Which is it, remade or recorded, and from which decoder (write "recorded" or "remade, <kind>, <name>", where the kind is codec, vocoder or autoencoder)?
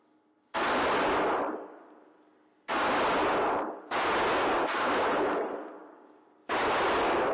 recorded